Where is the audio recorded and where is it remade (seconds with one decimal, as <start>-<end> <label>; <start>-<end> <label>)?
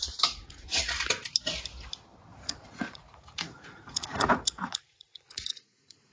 0.0-0.9 remade; 0.9-2.3 recorded; 2.3-6.1 remade